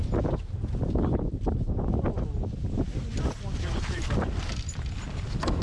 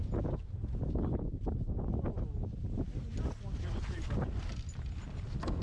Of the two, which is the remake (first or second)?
first